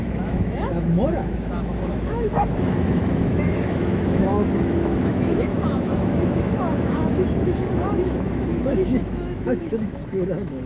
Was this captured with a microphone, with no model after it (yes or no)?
no